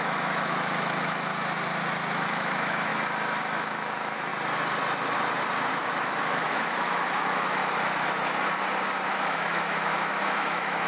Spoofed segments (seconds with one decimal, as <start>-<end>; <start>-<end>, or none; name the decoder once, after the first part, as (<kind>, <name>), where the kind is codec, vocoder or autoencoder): 0.0-1.3 (autoencoder, DAC-VAE); 2.1-2.9; 3.4-4.3; 5.7-7.6; 9.1-10.9